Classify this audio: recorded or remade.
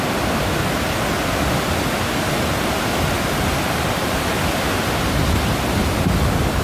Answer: recorded